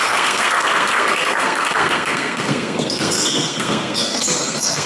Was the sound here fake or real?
fake